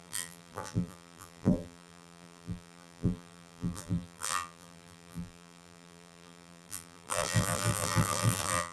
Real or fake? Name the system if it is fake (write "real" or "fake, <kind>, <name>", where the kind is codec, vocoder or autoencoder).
fake, vocoder, BigVGAN v2